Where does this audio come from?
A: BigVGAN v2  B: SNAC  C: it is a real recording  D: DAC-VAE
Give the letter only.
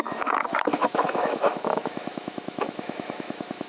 D